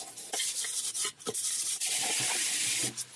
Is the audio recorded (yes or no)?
yes